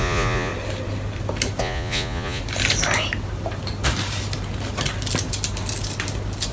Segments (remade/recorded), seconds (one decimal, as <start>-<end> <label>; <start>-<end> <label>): 0.0-0.5 remade; 0.5-1.6 recorded; 1.6-2.4 remade; 2.4-6.5 recorded